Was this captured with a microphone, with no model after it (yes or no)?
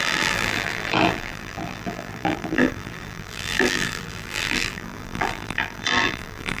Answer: no